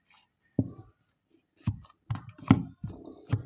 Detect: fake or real real